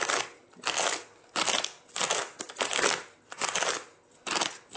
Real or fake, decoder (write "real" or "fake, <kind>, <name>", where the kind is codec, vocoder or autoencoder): real